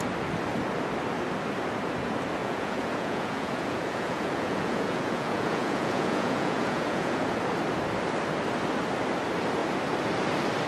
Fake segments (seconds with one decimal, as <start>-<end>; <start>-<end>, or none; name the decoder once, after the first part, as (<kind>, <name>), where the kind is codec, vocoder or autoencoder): 2.4-7.3 (vocoder, Vocos)

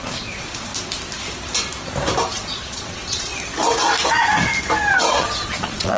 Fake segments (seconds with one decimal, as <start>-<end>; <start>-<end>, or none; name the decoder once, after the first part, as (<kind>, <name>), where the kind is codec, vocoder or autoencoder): 0.0-0.7 (vocoder, Vocos); 2.3-3.3; 5.1-6.0

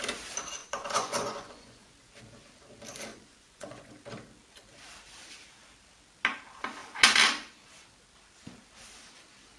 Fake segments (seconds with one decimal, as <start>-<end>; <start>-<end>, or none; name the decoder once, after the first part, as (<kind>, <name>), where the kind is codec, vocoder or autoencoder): 0.6-2.1 (vocoder, Vocos); 3.1-3.9

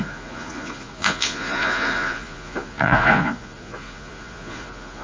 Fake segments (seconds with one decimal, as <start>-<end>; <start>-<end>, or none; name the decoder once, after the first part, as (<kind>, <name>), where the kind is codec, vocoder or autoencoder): 0.0-5.0 (vocoder, Vocos)